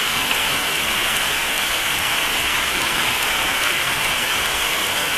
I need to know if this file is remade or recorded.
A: remade